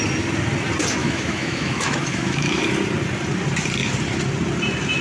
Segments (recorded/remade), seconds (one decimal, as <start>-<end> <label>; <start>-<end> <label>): 0.0-1.0 recorded; 1.0-2.6 remade; 2.6-5.0 recorded